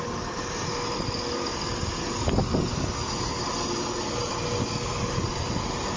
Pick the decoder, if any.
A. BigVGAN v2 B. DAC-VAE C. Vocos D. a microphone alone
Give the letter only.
D